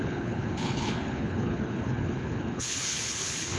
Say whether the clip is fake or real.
fake